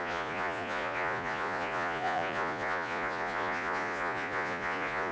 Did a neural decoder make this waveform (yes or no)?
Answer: yes